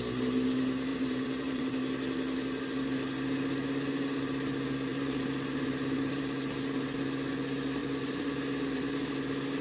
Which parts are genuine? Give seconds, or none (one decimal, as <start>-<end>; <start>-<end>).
0.0-0.9; 1.7-4.9; 6.2-7.8; 9.1-9.6